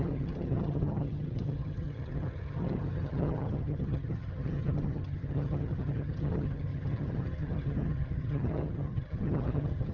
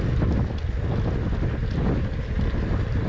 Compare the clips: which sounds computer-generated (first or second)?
first